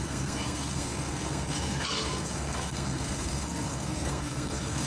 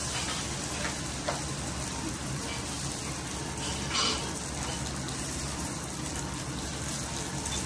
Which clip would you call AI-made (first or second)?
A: first